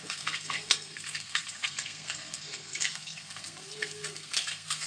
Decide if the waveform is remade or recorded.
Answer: remade